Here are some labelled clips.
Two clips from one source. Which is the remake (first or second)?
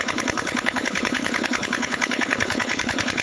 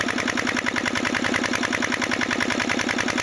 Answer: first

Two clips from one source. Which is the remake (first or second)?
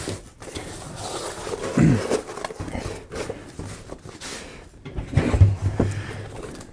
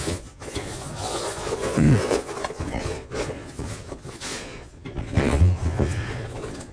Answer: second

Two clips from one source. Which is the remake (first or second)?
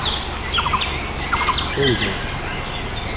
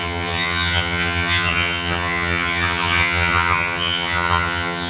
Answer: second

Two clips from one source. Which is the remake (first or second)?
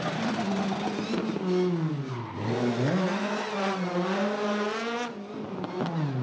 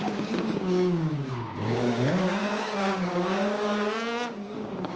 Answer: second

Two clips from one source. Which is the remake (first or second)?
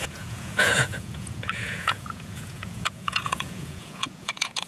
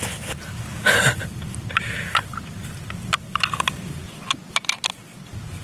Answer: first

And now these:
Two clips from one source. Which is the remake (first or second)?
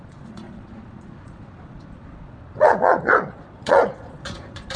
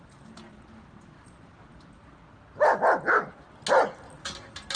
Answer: first